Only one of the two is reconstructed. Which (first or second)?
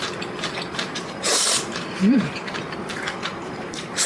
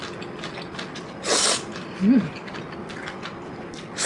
first